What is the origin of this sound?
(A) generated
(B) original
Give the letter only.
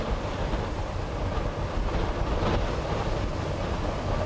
B